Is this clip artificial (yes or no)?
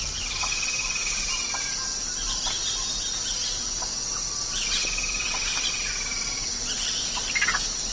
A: no